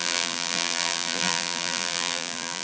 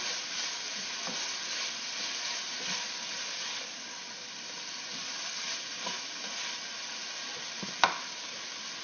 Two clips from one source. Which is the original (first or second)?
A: second